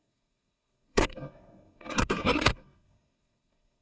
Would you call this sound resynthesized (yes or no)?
yes